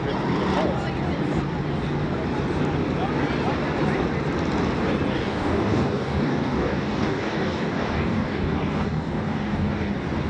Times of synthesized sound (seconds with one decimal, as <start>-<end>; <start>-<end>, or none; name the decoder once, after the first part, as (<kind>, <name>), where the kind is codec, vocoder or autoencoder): 5.1-9.9 (codec, DAC)